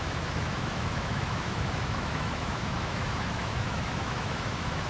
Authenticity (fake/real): fake